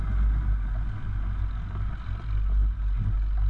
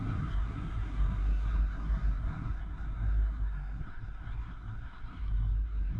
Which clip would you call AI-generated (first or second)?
second